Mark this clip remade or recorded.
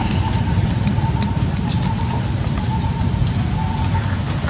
recorded